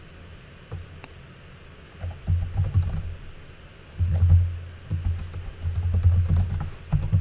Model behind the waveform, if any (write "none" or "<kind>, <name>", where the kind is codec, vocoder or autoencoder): none